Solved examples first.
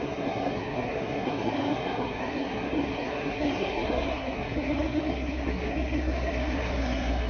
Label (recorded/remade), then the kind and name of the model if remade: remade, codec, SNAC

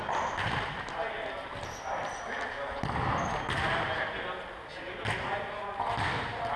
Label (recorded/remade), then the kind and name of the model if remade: recorded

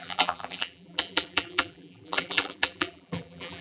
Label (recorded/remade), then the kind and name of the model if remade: remade, vocoder, BigVGAN v2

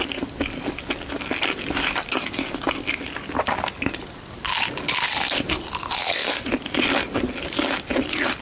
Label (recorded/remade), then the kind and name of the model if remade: recorded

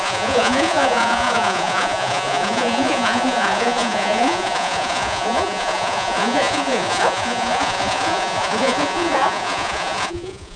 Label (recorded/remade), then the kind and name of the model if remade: remade, vocoder, Vocos